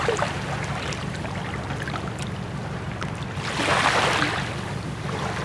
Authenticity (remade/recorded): recorded